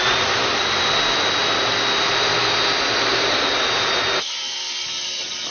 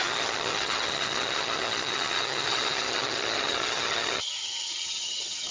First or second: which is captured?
first